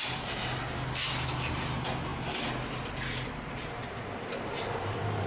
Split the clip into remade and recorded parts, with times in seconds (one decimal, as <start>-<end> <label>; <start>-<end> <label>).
0.0-0.6 remade; 0.6-1.5 recorded; 1.5-2.1 remade; 2.1-3.5 recorded; 3.5-5.3 remade